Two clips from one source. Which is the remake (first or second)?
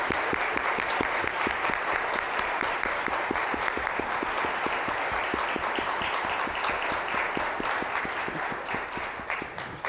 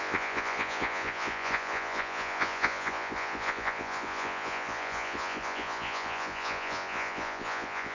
second